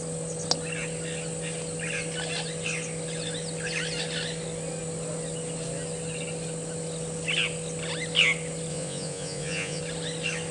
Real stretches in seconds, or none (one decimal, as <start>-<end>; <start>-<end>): 0.0-8.7; 9.8-10.5